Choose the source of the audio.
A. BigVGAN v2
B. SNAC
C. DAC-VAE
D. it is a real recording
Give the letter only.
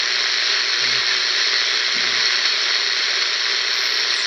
D